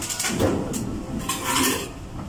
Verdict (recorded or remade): recorded